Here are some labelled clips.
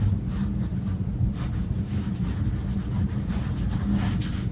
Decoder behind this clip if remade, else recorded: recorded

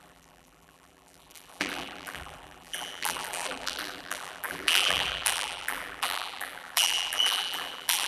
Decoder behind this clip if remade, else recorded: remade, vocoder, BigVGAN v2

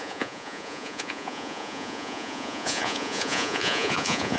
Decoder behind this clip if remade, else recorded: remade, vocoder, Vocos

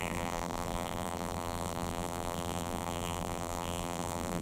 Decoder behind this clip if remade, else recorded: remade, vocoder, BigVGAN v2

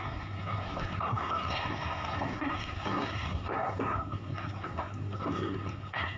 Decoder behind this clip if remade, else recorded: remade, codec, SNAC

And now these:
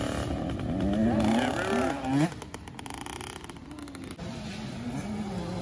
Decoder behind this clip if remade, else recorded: recorded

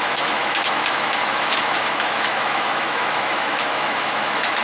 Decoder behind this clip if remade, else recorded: remade, autoencoder, DAC-VAE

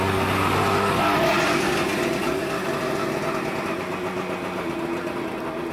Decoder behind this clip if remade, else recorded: recorded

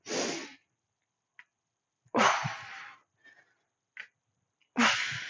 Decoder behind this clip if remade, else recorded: recorded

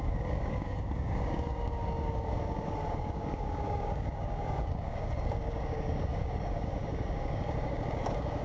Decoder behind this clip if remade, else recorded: remade, codec, DAC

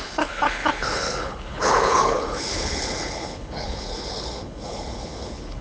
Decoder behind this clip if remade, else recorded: remade, codec, HILCodec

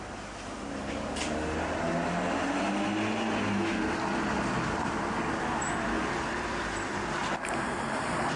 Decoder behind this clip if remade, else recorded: recorded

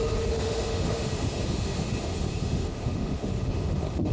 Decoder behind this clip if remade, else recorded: remade, autoencoder, DAC-VAE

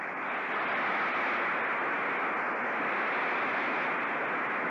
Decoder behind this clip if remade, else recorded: recorded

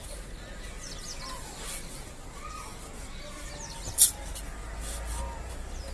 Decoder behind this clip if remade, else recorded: recorded